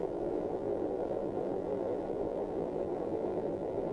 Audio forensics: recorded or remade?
remade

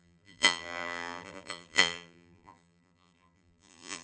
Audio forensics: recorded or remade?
remade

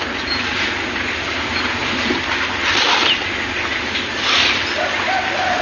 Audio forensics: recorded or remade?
recorded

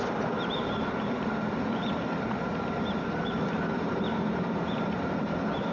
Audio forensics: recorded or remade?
remade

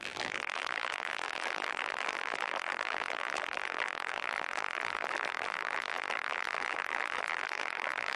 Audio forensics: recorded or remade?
remade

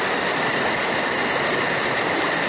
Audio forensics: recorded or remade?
remade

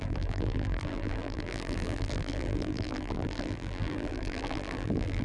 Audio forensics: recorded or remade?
remade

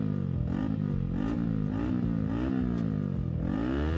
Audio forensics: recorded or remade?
recorded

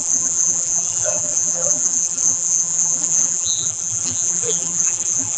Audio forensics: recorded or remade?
remade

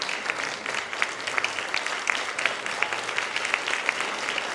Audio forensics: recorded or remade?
recorded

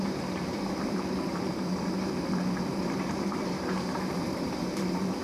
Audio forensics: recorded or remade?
remade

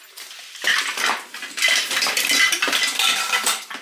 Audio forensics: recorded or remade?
remade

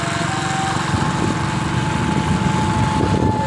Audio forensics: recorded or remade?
recorded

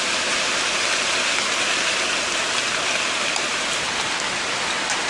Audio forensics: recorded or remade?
recorded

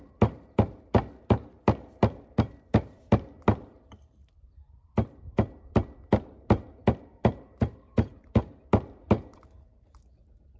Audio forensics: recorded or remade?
remade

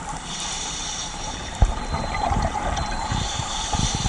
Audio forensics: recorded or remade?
remade